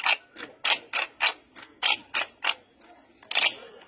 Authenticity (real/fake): real